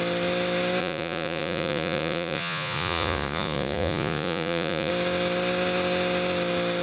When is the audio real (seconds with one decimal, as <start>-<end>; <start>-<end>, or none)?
0.0-0.8; 4.9-6.8